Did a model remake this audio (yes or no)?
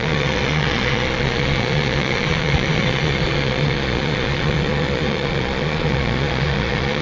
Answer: yes